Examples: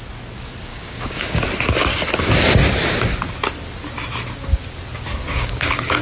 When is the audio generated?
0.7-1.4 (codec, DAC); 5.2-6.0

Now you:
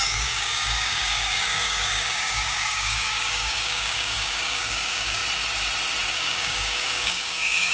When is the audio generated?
0.0-5.2 (codec, DAC); 6.1-7.7

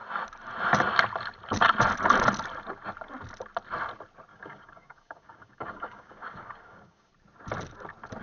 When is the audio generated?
4.3-7.1 (codec, DAC)

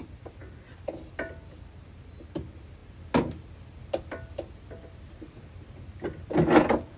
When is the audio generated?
none

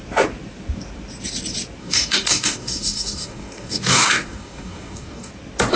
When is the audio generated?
1.8-5.3 (codec, DAC)

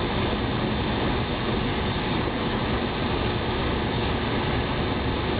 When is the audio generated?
1.7-2.6 (codec, DAC); 3.6-4.2

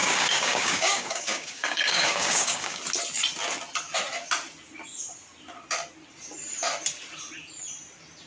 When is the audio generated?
0.0-2.8 (codec, DAC)